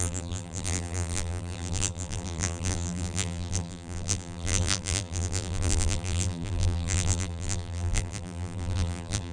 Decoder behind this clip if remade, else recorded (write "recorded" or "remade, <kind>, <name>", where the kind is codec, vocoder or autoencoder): remade, vocoder, BigVGAN v2